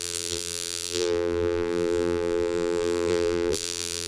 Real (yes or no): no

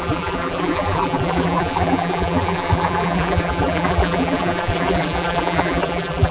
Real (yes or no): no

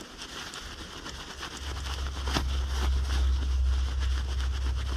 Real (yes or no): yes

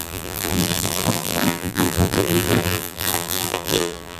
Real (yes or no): no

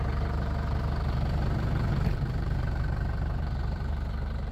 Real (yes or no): no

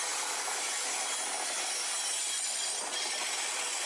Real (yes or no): yes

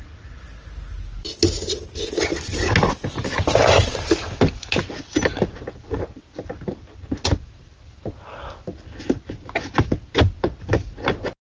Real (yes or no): yes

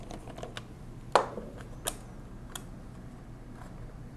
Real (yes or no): yes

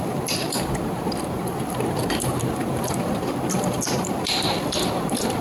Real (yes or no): no